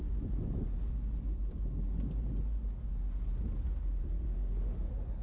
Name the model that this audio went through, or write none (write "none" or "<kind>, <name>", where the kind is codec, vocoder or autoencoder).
none